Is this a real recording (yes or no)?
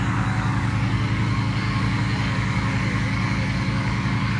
no